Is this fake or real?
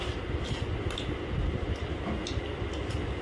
real